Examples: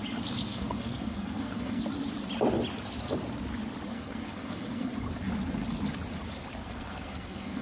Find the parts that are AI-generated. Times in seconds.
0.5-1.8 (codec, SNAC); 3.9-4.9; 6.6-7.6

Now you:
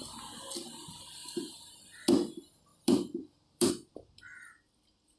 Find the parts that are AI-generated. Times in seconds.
1.2-1.8 (vocoder, BigVGAN v2); 2.7-3.7

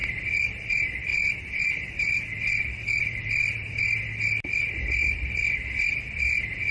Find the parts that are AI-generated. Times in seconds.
0.0-0.7 (vocoder, BigVGAN v2); 1.1-3.8

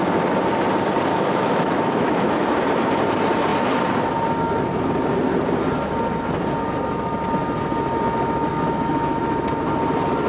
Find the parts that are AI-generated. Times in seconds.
1.1-2.3 (autoencoder, DAC-VAE); 8.5-9.2

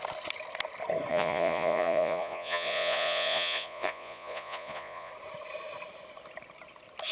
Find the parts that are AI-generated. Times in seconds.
1.1-5.1 (vocoder, Vocos)

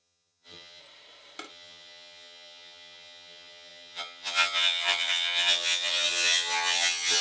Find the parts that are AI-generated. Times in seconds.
0.0-0.8 (vocoder, HiFi-GAN); 1.5-7.2

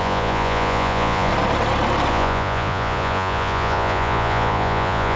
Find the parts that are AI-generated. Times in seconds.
0.0-1.3 (vocoder, Vocos); 2.1-5.2